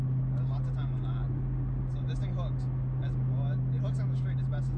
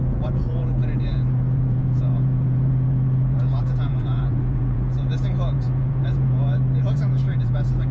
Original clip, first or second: first